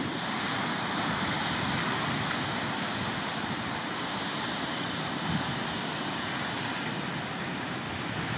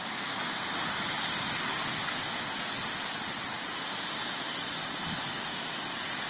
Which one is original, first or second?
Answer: second